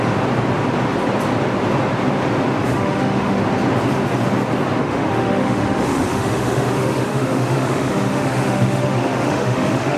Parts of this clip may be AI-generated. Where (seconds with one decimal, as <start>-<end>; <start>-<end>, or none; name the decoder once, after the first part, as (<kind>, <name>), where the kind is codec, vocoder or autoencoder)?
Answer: 2.6-3.4 (autoencoder, DAC-VAE); 4.8-10.0